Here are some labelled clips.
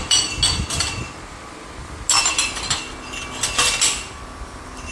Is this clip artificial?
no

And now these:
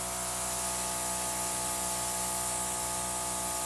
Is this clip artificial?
no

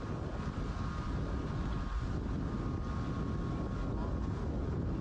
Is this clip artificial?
no